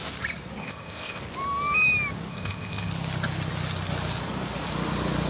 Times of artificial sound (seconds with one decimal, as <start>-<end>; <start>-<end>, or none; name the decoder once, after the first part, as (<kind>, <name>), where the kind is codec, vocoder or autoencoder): 0.6-1.2 (codec, ZipCodec); 2.3-2.9